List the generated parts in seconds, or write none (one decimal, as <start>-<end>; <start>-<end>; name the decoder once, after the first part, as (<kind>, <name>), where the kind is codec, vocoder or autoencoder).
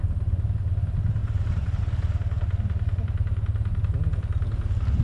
1.2-1.8 (vocoder, BigVGAN v2)